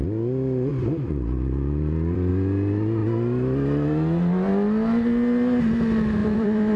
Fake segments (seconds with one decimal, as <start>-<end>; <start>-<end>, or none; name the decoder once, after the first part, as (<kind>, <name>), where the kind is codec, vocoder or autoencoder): 0.7-2.3 (vocoder, BigVGAN v2); 6.2-6.8